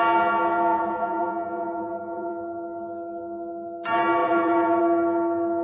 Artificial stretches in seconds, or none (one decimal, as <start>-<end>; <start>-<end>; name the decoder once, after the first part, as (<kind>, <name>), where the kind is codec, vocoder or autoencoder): 0.7-2.3 (vocoder, Vocos); 4.2-4.8